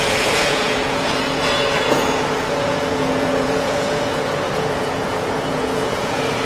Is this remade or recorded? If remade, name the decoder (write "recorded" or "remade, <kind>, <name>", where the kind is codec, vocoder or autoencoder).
remade, vocoder, Vocos